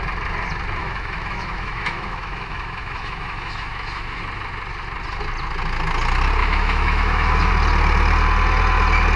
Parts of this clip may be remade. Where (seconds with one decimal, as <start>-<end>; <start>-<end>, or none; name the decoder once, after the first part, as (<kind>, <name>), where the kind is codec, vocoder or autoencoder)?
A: 0.8-4.2 (autoencoder, DAC-VAE); 6.4-7.5